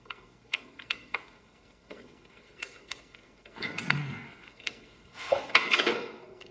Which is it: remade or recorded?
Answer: remade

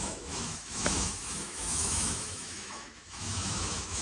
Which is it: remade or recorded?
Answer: remade